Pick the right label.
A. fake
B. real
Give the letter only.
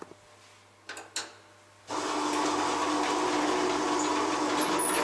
B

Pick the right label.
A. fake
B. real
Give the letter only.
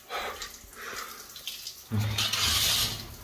B